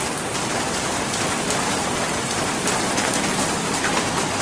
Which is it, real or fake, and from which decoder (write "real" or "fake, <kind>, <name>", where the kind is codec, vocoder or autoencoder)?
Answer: real